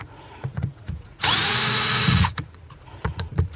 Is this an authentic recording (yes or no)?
no